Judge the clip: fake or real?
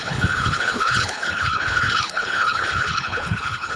fake